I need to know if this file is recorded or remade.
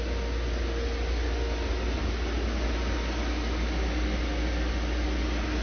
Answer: recorded